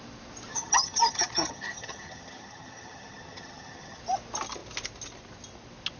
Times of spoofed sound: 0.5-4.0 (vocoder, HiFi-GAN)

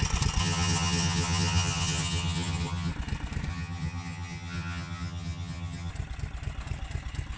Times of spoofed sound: 0.4-2.9 (vocoder, HiFi-GAN); 3.5-5.9

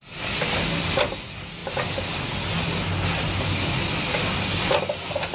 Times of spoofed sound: none

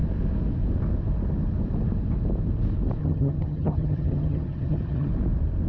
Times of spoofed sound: 3.0-5.1 (vocoder, HiFi-GAN)

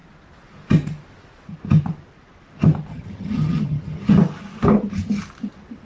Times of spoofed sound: 2.9-4.1 (vocoder, HiFi-GAN)

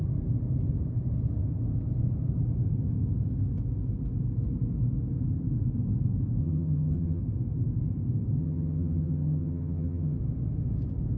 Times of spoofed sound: 6.4-7.2 (vocoder, HiFi-GAN); 8.4-10.2

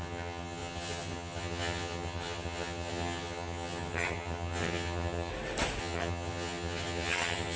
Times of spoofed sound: 0.0-5.3 (vocoder, HiFi-GAN); 5.8-7.6